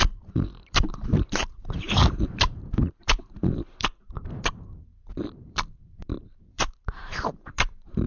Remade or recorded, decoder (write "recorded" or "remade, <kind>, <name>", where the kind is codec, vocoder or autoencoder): remade, vocoder, BigVGAN v2